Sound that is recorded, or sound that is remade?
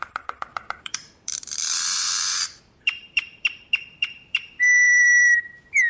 remade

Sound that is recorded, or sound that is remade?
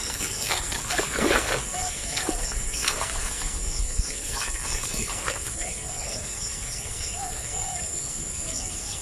remade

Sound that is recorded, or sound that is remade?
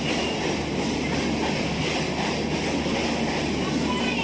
recorded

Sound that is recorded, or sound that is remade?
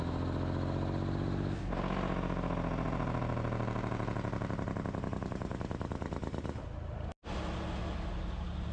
recorded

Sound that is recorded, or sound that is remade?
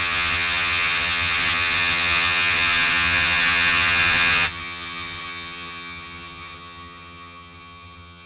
remade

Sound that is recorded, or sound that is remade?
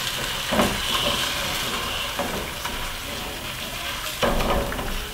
recorded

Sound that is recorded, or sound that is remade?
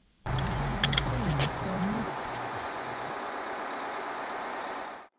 remade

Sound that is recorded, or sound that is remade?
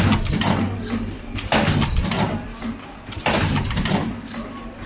recorded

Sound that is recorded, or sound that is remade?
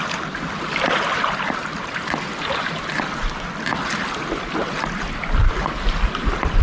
recorded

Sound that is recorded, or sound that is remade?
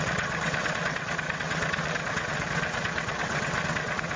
remade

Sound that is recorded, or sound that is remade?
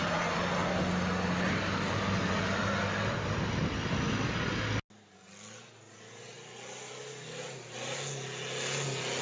recorded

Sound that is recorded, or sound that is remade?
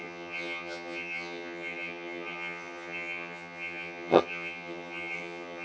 remade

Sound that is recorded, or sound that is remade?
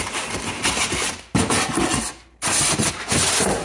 recorded